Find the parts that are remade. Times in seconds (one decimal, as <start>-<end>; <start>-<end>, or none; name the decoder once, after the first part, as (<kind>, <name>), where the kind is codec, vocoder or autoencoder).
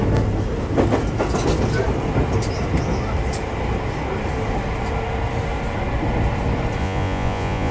6.8-7.7 (vocoder, Vocos)